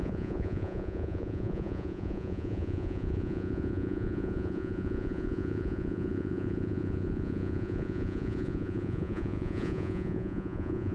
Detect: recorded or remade remade